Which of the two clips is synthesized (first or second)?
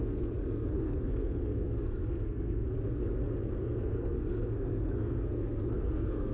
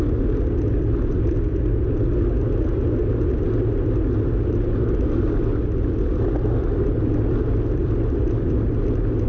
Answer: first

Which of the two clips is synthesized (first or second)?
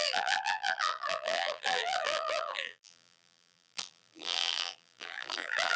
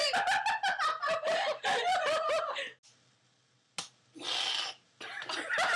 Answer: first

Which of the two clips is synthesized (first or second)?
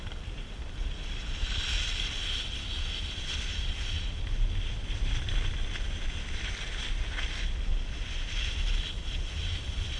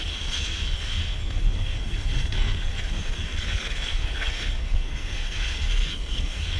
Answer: second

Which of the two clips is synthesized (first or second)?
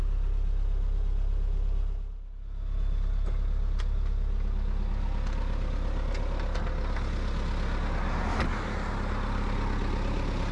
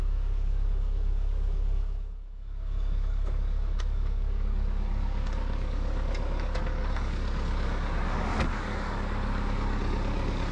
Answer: second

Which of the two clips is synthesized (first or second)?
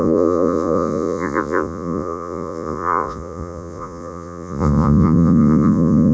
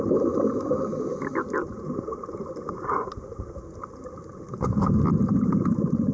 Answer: first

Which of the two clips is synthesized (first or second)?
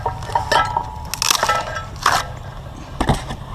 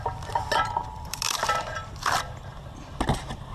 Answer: second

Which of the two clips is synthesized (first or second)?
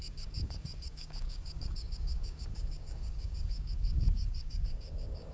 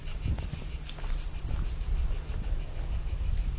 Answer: first